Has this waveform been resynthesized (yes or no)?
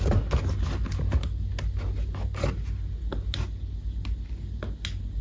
no